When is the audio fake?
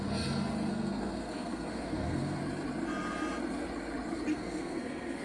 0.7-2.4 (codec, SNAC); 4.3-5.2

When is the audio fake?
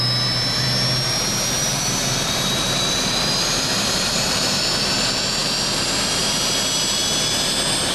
1.6-4.6 (vocoder, BigVGAN v2)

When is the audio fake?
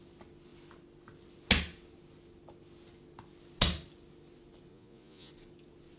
4.7-5.3 (vocoder, Vocos)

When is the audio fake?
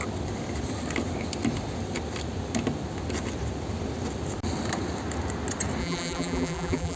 5.8-7.0 (vocoder, BigVGAN v2)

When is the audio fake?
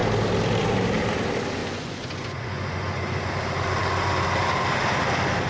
1.6-3.3 (vocoder, Vocos)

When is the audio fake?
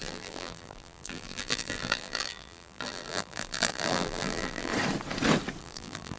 0.0-4.7 (vocoder, BigVGAN v2); 5.6-6.2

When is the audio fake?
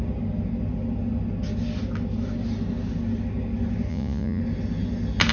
3.9-4.4 (vocoder, Vocos)